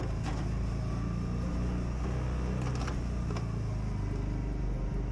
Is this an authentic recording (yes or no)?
yes